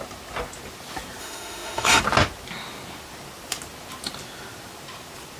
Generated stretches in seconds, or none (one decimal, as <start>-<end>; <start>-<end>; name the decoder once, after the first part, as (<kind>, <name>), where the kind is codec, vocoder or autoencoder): 1.2-2.0 (autoencoder, DAC-VAE)